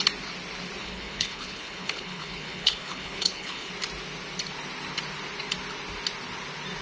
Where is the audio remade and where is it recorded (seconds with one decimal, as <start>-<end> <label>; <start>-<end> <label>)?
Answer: 0.0-0.8 recorded; 0.8-3.7 remade; 3.7-6.8 recorded